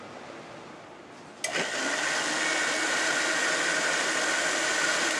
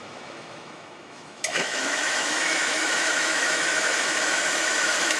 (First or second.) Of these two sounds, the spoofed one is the second